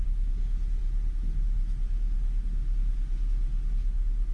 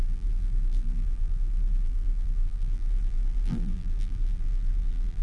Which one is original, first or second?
first